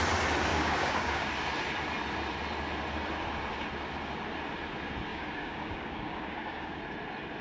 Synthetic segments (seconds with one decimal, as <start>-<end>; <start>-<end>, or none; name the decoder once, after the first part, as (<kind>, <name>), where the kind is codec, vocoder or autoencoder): 0.5-1.3 (codec, DAC); 5.1-6.8